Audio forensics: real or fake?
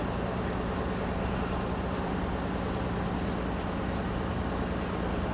real